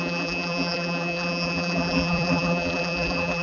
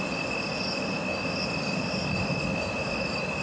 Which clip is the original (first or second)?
second